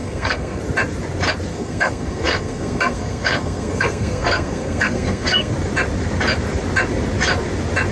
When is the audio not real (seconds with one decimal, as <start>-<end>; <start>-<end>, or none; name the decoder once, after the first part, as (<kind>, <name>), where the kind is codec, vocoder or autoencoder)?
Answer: 0.0-0.6 (codec, SNAC); 1.5-5.5